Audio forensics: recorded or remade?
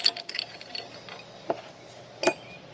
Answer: recorded